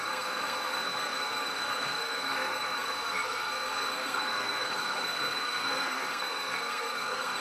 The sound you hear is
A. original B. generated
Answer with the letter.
B